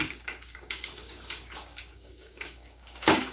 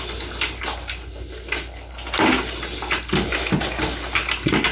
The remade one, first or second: first